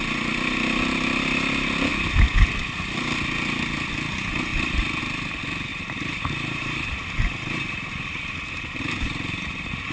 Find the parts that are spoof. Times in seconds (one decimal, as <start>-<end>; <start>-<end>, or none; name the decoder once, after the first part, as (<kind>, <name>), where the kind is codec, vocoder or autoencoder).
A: 4.5-5.0 (vocoder, BigVGAN v2); 5.7-9.9